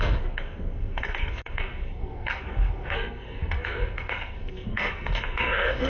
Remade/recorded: remade